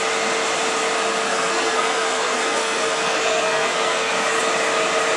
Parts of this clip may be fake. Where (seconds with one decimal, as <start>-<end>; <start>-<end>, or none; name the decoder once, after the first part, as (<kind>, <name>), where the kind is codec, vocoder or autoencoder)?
1.3-4.4 (codec, SNAC)